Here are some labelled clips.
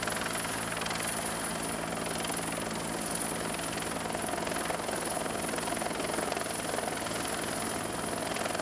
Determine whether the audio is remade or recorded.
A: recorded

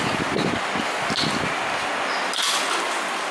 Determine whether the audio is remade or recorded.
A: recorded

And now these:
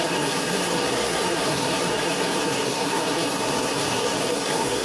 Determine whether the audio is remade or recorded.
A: remade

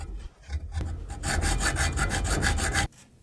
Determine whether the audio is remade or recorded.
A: recorded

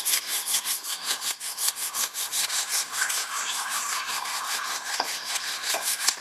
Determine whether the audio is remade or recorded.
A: remade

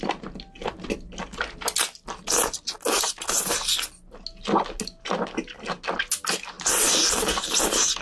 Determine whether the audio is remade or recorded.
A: recorded